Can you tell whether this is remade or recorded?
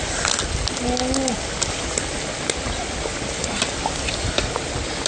recorded